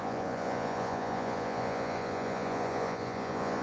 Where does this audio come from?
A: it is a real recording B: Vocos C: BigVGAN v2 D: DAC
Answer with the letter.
B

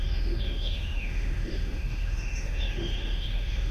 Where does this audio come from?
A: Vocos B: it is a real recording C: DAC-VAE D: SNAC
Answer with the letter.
C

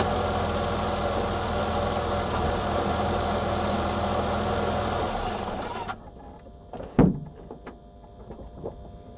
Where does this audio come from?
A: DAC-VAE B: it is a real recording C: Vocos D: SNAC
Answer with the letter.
B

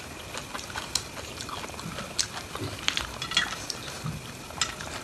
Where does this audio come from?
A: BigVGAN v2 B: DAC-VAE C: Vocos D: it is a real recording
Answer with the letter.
D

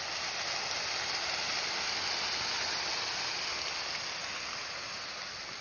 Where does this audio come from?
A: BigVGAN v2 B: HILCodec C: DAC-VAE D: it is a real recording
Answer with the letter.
D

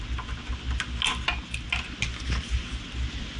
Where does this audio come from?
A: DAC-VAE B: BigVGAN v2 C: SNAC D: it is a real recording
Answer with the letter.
D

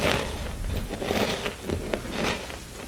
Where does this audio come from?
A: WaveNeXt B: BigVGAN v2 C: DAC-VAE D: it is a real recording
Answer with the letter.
D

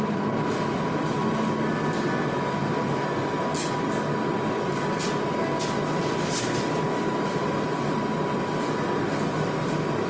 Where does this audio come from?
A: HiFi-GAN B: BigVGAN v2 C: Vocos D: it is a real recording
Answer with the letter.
D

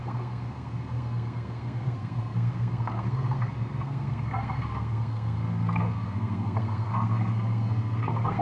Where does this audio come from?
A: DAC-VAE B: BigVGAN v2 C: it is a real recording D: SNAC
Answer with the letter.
D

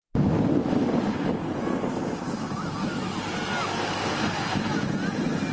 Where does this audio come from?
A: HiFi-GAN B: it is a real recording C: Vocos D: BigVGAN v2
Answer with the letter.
B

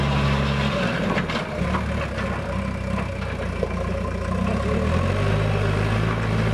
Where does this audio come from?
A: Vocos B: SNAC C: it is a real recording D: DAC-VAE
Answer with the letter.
C